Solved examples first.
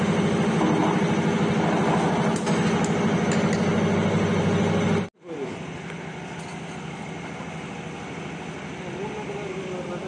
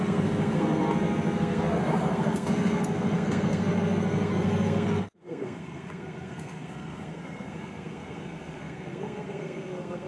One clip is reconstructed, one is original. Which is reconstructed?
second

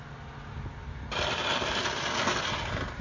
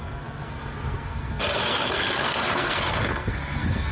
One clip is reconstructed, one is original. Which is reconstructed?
second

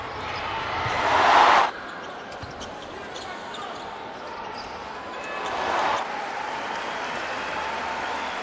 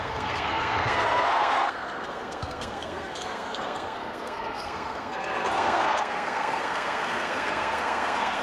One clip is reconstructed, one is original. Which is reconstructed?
second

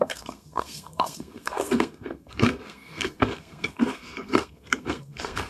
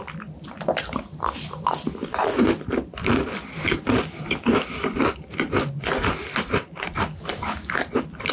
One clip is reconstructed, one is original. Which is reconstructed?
first